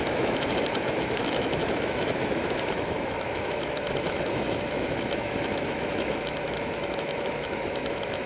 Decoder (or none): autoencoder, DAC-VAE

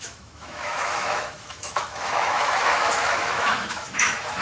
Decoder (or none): autoencoder, DAC-VAE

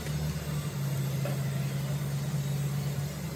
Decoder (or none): none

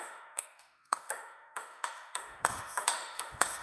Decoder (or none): autoencoder, DAC-VAE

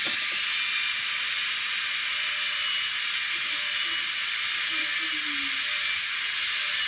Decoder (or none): none